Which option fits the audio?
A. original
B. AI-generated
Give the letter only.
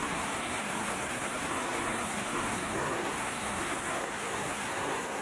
B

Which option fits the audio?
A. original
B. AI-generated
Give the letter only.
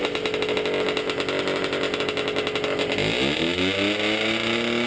A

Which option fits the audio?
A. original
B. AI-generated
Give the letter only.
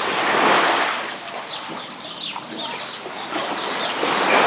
A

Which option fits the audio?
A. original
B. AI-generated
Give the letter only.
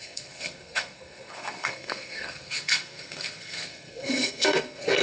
B